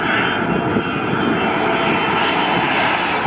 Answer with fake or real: real